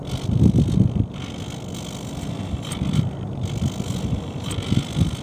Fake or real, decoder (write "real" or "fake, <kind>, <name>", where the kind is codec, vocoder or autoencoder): real